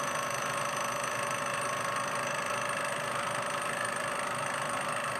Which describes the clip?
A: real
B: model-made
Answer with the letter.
A